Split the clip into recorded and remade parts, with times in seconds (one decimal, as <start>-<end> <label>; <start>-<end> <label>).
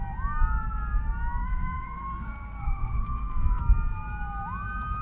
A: 0.0-1.4 recorded; 1.4-3.6 remade; 3.6-5.0 recorded